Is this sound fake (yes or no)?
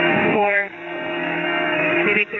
yes